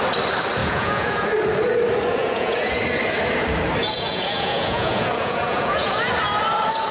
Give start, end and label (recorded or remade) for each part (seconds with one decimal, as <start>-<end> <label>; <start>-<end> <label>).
0.0-0.6 recorded; 0.6-1.3 remade; 1.3-2.2 recorded; 2.2-2.8 remade; 2.8-3.8 recorded; 3.8-6.1 remade; 6.1-6.9 recorded